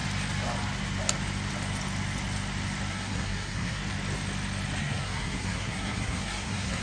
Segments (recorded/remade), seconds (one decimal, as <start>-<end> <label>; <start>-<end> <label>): 0.0-2.9 recorded; 2.9-3.8 remade; 3.8-4.8 recorded; 4.8-6.8 remade